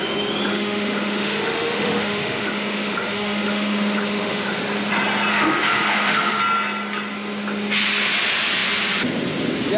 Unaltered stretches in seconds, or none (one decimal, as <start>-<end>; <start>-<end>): 0.0-0.5; 4.6-5.3; 6.4-9.8